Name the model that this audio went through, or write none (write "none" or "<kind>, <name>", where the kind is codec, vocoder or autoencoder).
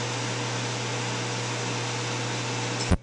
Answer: none